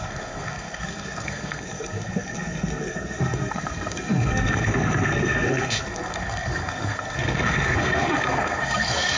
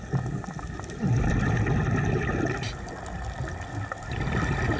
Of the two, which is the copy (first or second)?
first